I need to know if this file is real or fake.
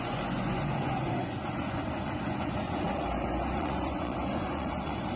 fake